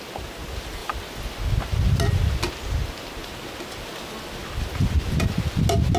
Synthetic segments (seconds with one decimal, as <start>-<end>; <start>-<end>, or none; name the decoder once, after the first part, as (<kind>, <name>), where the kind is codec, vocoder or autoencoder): none